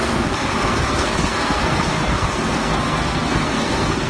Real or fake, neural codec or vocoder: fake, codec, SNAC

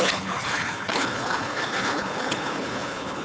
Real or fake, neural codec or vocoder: fake, codec, HILCodec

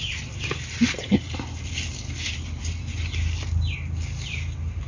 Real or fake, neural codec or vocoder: real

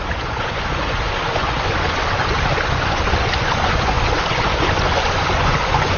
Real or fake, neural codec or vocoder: fake, vocoder, Vocos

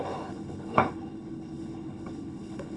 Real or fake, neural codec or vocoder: fake, codec, HILCodec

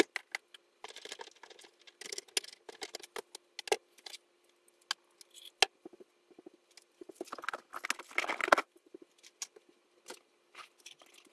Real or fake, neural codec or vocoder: real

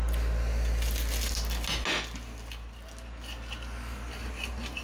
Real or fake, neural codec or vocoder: real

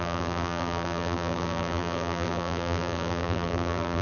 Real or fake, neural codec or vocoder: fake, vocoder, BigVGAN v2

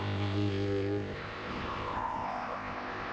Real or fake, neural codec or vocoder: fake, codec, ZipCodec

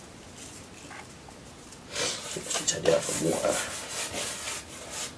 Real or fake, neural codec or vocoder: real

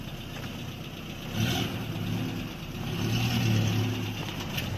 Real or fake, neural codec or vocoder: real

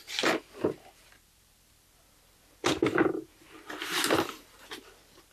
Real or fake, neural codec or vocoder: fake, vocoder, BigVGAN v2